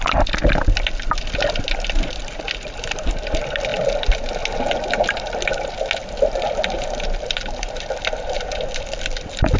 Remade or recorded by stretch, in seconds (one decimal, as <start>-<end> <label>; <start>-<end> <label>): 0.0-9.6 recorded